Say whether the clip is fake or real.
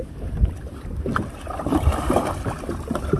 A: real